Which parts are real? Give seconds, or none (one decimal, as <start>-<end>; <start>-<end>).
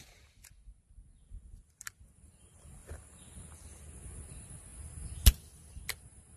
0.0-6.4